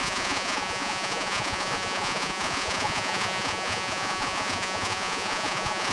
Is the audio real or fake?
fake